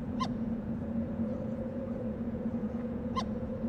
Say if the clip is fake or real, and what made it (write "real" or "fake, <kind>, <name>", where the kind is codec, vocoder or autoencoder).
fake, vocoder, Vocos